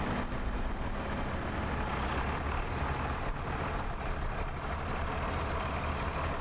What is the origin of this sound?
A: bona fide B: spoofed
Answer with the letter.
A